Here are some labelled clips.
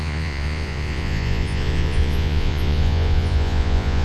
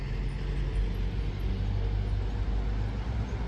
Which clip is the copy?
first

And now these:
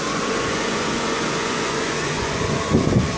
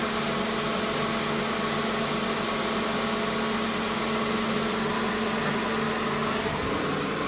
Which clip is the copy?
first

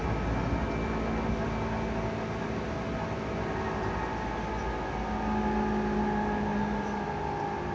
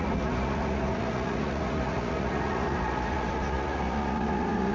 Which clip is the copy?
second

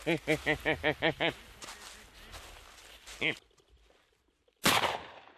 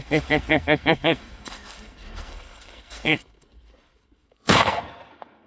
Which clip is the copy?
second